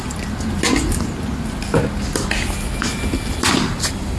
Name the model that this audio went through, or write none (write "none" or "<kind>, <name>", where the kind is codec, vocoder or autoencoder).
none